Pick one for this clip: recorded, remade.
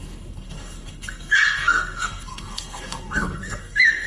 remade